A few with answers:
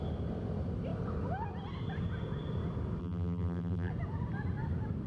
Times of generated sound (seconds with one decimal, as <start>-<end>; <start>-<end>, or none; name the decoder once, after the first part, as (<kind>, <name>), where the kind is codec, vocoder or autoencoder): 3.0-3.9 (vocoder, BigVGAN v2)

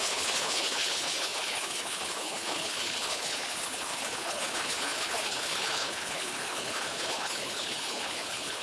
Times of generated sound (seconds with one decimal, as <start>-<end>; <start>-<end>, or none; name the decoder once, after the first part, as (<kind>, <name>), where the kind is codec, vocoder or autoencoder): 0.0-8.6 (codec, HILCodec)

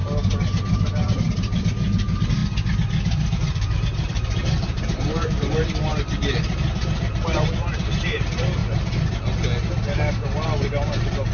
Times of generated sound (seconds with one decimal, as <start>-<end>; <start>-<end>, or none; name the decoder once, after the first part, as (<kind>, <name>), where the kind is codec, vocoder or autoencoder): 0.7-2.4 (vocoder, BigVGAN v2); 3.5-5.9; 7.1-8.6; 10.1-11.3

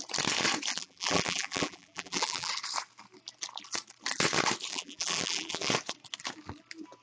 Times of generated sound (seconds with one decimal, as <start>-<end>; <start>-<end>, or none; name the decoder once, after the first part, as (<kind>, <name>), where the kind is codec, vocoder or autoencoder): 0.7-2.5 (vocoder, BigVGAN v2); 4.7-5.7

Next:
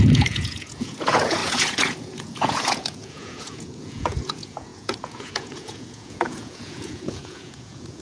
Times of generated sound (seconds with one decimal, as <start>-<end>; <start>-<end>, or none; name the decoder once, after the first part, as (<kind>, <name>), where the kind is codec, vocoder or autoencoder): 0.0-8.0 (vocoder, Vocos)

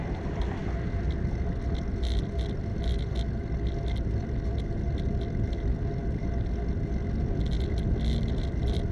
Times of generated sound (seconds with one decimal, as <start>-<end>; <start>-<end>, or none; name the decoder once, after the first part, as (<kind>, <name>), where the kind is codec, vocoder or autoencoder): none

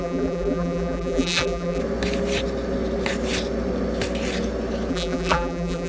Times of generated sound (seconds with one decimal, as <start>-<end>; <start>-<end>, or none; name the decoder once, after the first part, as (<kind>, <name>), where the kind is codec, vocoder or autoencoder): 0.0-1.8 (vocoder, BigVGAN v2); 4.9-5.9

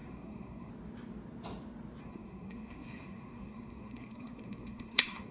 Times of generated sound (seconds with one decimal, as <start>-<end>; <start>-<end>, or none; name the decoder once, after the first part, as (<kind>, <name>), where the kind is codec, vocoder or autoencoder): 0.0-0.7 (codec, SNAC); 2.0-5.3